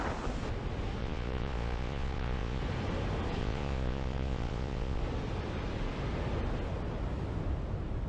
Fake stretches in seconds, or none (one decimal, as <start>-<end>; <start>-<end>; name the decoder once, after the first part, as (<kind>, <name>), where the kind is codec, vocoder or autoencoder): 1.0-2.6 (vocoder, Vocos); 3.4-5.0